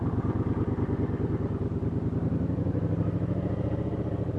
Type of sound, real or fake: real